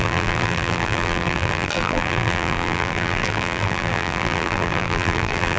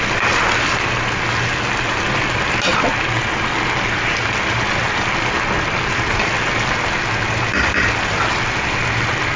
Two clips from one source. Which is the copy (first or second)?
first